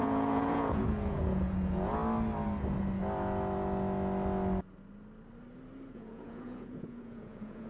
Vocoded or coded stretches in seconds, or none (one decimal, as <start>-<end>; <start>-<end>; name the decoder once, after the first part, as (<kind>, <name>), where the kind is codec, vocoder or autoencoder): 0.0-2.0 (vocoder, Vocos); 5.9-7.7